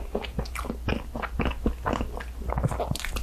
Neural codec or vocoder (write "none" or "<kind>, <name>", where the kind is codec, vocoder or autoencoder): none